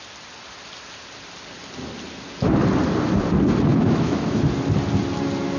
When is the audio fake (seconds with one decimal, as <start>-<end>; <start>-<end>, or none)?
3.7-4.4

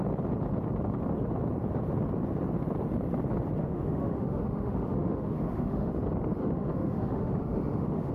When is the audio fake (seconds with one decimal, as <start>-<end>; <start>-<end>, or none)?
3.6-5.9; 6.4-8.1

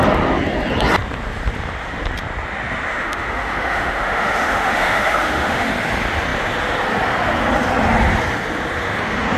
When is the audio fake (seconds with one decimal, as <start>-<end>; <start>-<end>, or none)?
2.9-5.7

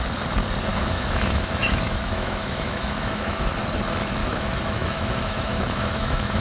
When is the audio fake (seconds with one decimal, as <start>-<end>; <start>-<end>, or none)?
0.7-3.5; 4.2-6.4

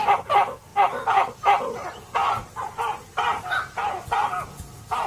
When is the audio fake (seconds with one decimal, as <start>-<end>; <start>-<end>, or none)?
none

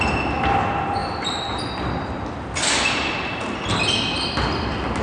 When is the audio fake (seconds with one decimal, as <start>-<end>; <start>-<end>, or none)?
none

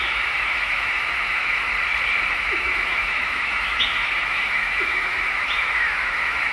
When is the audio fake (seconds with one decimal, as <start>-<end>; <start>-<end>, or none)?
0.0-1.7; 2.3-6.5

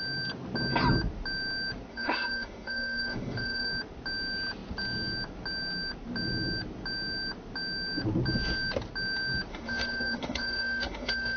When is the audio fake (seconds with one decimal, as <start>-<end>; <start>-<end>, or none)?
1.9-3.7; 9.5-11.4